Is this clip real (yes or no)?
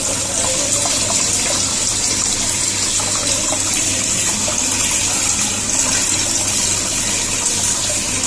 yes